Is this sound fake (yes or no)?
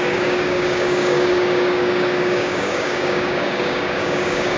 yes